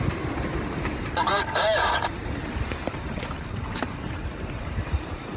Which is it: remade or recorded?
remade